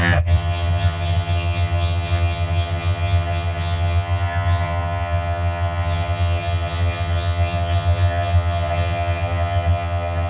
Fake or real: fake